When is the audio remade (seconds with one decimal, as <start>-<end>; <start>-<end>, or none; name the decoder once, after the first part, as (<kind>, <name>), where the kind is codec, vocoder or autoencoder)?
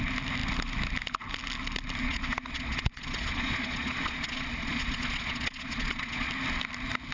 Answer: 2.0-6.3 (vocoder, Vocos)